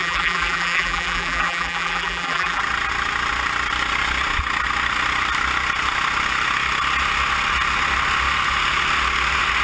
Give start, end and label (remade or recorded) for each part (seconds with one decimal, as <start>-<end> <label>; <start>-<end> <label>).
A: 0.0-2.6 remade; 2.6-9.6 recorded